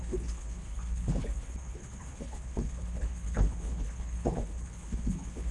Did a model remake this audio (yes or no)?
yes